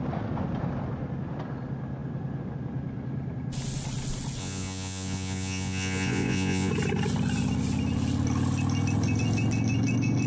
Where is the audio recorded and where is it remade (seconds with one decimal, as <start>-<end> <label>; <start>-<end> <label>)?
0.0-4.4 recorded; 4.4-6.7 remade; 6.7-10.3 recorded